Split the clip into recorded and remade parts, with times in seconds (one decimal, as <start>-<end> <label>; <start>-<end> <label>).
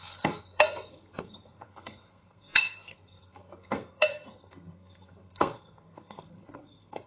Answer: 0.0-7.1 remade